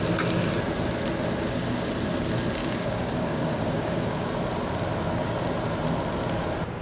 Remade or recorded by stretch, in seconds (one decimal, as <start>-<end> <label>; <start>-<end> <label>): 0.0-2.6 recorded; 2.6-4.3 remade; 4.3-6.8 recorded

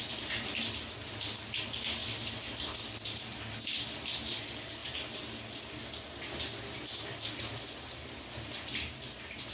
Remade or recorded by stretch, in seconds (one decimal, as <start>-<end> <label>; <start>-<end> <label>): 0.0-9.5 recorded

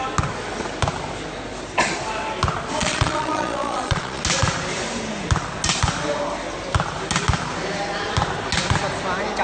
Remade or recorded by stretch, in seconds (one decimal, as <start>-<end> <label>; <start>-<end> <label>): 0.0-2.8 recorded; 2.8-4.2 remade; 4.2-9.4 recorded

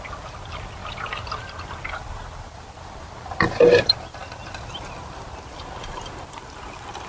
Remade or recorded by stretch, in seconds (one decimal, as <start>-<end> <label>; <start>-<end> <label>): 0.0-7.1 recorded

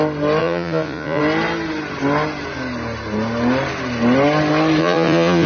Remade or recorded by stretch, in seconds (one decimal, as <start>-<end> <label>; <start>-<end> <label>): 0.0-0.4 recorded; 0.4-1.2 remade; 1.2-4.8 recorded; 4.8-5.5 remade

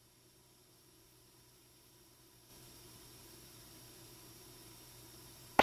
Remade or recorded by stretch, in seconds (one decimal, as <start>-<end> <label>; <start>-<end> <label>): 0.0-5.6 remade